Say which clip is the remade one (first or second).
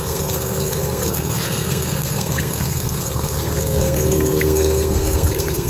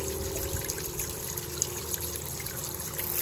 first